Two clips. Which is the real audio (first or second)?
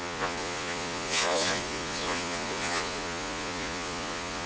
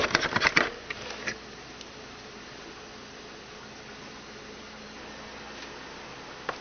second